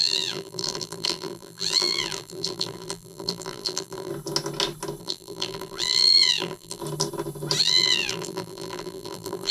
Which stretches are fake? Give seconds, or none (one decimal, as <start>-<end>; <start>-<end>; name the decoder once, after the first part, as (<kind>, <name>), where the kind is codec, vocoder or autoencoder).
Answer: 0.0-4.1 (vocoder, BigVGAN v2); 5.0-6.8; 7.6-9.5